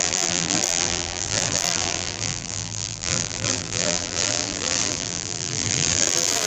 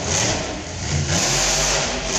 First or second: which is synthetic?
first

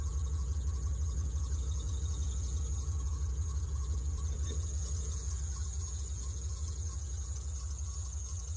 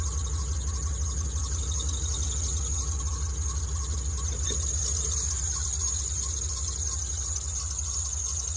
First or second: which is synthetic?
first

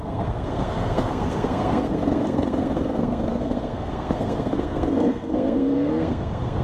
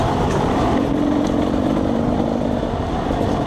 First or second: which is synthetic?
first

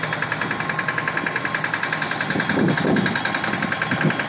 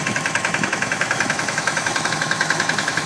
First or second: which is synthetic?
second